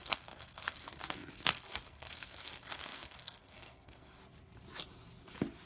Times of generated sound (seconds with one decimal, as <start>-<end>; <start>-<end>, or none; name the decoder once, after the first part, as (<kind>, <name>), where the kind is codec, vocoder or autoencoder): 0.0-4.2 (codec, SNAC)